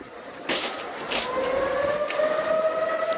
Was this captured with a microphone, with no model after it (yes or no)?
yes